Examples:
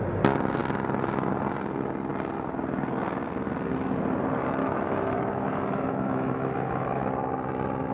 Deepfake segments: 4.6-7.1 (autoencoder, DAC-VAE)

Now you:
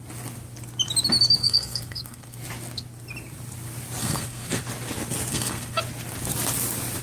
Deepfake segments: 1.4-2.4 (codec, SNAC); 4.0-4.6; 5.3-5.8

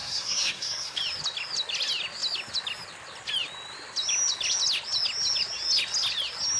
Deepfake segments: 0.0-1.0 (codec, SNAC)

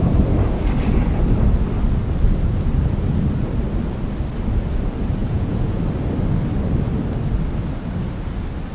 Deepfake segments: 5.2-5.8 (vocoder, Vocos)